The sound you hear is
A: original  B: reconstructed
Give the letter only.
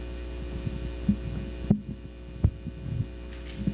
A